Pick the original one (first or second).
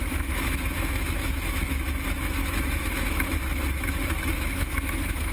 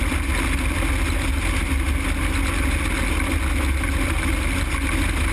second